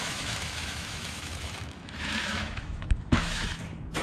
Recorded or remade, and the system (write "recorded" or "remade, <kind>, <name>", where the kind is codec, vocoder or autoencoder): remade, autoencoder, DAC-VAE